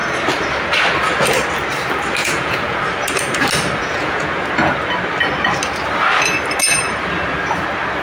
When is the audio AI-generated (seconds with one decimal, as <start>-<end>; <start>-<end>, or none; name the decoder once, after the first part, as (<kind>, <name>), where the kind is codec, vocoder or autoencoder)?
2.2-2.8 (vocoder, Vocos); 3.8-4.4